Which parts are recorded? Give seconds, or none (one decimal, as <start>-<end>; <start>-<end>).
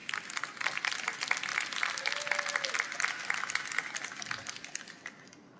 0.0-5.6